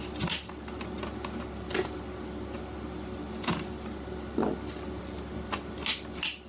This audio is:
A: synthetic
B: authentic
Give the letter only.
B